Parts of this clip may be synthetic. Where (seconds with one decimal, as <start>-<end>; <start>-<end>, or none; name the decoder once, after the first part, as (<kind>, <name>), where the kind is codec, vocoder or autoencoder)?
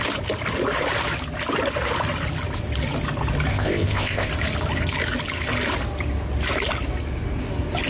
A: 3.5-4.3 (codec, ZipCodec)